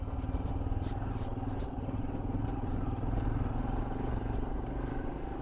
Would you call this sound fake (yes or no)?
yes